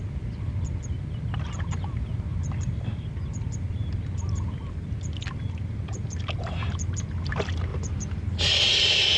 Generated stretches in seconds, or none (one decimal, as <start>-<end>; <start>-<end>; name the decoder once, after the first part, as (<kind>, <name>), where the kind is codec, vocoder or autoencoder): none